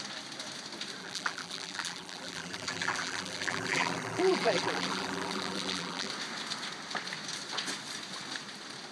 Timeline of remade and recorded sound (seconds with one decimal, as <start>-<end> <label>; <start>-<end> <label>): 0.0-1.0 recorded; 1.0-6.1 remade; 6.1-8.9 recorded